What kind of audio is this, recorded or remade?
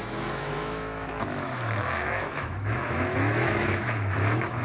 remade